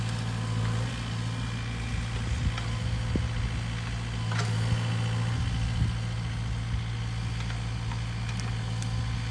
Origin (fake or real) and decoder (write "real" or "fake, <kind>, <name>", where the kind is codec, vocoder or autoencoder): real